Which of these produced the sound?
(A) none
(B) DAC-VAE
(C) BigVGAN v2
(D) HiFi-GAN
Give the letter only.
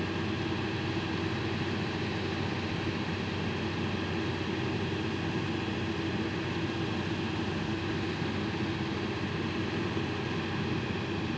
A